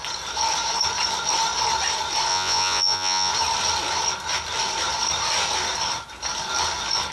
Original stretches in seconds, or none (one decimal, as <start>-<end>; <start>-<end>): 0.0-2.3; 3.3-7.1